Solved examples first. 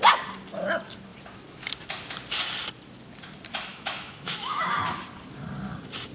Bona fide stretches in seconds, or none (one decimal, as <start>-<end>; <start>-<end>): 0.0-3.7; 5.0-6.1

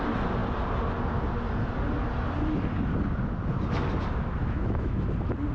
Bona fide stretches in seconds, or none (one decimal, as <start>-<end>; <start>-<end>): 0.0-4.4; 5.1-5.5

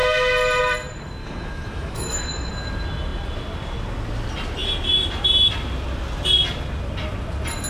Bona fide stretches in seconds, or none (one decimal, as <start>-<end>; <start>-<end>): 0.0-1.2; 2.5-7.7

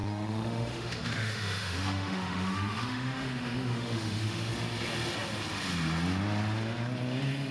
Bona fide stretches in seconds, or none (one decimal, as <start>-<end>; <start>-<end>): 4.5-7.5

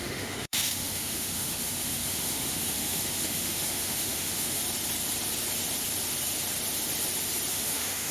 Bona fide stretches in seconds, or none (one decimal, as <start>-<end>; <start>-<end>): 4.6-7.5

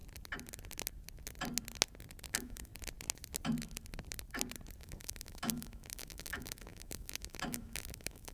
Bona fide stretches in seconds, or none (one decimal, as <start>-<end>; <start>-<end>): 0.0-2.3; 2.7-4.8